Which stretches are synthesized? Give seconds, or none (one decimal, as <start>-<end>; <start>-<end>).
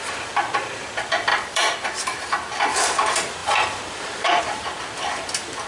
1.3-2.5